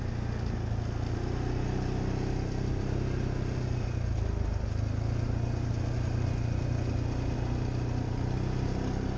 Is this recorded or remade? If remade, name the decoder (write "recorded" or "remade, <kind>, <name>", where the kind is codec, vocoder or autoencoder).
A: recorded